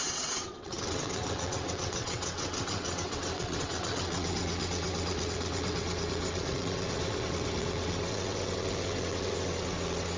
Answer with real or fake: fake